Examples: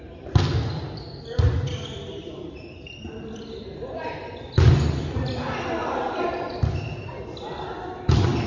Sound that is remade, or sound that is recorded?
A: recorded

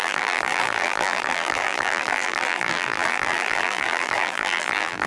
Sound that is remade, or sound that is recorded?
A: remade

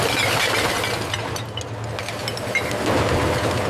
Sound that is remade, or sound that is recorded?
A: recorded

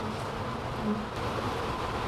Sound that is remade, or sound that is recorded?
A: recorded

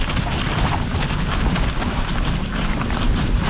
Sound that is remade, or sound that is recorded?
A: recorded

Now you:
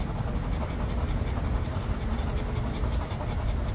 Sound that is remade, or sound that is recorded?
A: recorded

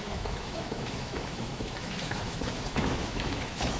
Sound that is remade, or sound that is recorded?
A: remade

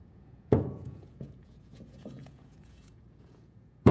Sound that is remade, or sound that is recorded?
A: remade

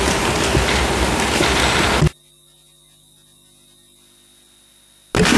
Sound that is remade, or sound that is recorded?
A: recorded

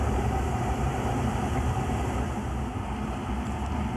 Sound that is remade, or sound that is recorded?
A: remade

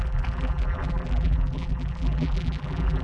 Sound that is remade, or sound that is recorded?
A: remade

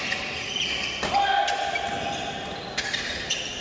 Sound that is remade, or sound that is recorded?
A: recorded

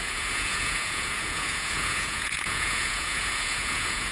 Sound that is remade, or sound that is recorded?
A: remade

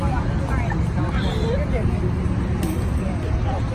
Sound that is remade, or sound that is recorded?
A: recorded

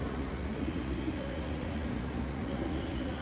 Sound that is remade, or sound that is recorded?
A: remade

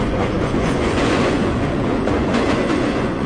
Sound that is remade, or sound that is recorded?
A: remade